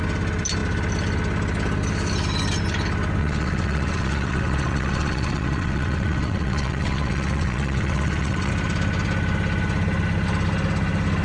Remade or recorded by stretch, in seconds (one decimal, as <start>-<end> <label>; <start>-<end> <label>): 0.0-3.2 recorded; 3.2-8.5 remade; 8.5-11.2 recorded